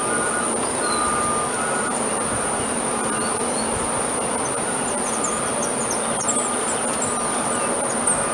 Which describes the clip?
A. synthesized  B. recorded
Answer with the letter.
B